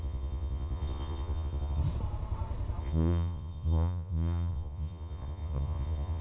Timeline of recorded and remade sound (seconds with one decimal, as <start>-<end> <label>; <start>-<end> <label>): 0.0-1.8 remade; 1.8-2.8 recorded; 2.8-6.2 remade